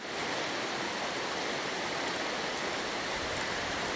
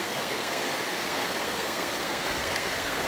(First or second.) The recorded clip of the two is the first